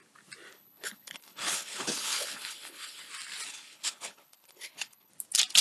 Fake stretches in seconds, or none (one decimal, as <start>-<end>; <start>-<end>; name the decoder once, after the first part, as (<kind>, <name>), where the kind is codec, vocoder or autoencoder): 0.5-3.1 (codec, HILCodec); 3.5-5.1